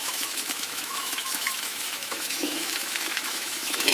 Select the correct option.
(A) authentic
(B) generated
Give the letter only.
B